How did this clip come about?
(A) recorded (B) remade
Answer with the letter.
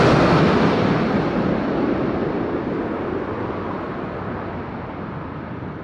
A